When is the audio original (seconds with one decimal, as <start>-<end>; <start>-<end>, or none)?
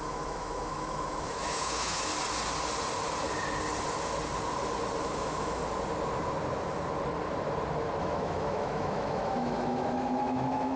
2.1-5.0; 5.6-8.0